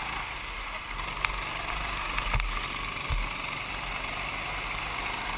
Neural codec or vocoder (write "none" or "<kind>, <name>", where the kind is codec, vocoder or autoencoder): none